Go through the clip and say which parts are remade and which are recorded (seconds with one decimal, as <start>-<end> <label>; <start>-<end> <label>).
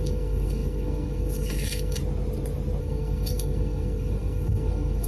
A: 0.0-2.0 remade; 2.0-2.8 recorded; 2.8-5.1 remade